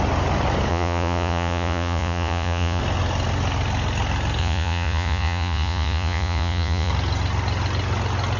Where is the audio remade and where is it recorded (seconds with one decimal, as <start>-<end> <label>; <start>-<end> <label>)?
0.0-0.7 recorded; 0.7-2.8 remade; 2.8-4.4 recorded; 4.4-6.9 remade; 6.9-8.4 recorded